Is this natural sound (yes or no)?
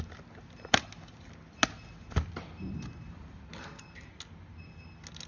yes